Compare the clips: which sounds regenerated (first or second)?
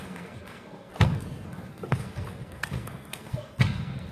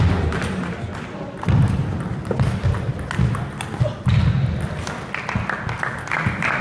first